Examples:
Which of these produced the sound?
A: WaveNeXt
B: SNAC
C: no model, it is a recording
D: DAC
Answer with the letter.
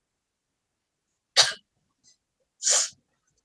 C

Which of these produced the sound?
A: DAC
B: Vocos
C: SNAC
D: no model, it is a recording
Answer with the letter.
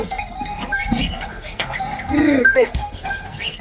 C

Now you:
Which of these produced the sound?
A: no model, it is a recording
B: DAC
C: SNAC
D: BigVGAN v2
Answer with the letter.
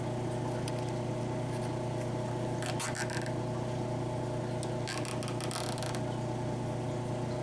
A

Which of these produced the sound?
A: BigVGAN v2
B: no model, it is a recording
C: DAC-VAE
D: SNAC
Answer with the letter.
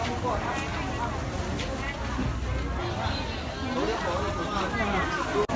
B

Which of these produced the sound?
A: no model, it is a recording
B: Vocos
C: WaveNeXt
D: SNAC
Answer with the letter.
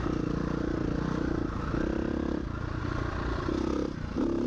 A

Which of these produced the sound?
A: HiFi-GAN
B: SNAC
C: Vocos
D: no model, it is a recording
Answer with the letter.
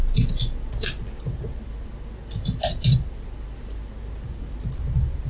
D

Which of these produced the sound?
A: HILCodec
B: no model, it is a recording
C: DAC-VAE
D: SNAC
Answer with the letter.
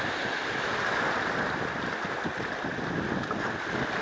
B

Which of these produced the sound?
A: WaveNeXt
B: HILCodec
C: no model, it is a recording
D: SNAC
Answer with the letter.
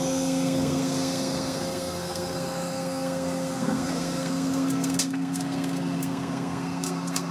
D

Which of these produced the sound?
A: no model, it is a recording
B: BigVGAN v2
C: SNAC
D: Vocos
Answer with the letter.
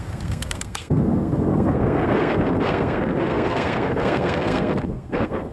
C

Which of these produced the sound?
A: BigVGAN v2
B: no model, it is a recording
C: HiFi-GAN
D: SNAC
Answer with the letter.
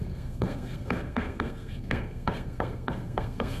D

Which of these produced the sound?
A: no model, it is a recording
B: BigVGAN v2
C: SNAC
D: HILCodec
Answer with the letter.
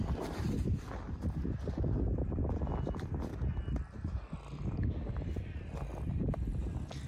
A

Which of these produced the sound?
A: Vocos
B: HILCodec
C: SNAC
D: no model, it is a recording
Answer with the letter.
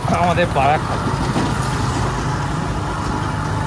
D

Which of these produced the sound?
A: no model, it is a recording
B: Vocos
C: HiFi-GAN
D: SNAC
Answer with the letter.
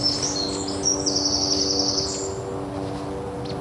A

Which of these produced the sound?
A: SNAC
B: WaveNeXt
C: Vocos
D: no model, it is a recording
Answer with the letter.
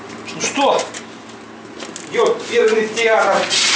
D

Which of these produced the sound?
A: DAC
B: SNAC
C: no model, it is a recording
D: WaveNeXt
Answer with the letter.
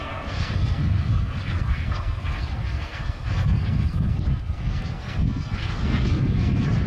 B